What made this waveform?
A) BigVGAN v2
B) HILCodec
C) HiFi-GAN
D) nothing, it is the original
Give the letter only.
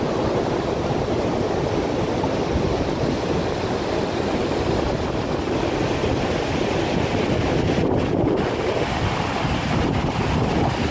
D